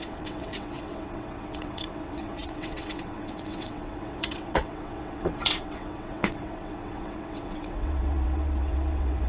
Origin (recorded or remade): remade